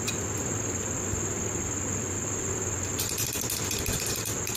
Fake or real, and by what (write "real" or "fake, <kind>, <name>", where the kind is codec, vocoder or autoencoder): real